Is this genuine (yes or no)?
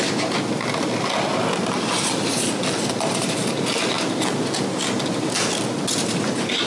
yes